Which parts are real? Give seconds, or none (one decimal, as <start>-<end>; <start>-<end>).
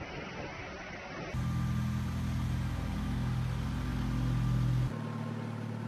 0.0-5.9